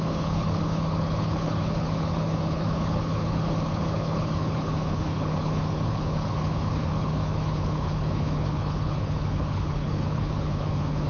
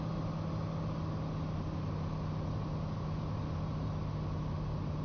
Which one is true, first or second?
second